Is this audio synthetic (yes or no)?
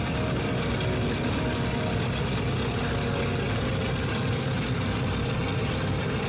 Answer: no